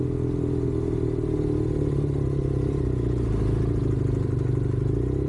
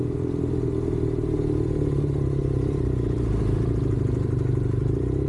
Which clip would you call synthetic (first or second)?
second